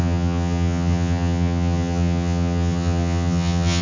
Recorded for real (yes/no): no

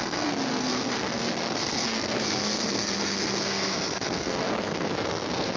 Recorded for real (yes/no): no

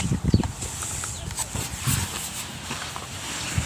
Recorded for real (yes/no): yes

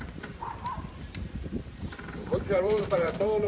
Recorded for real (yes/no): no